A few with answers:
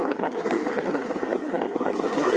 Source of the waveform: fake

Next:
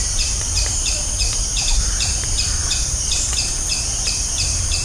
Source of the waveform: fake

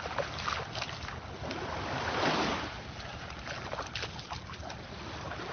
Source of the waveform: real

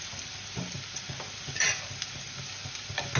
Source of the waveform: real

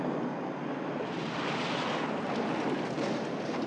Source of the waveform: real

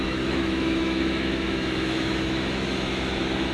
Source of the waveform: fake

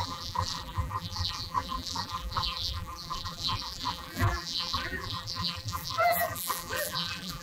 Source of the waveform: fake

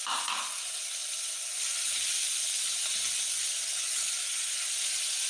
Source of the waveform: real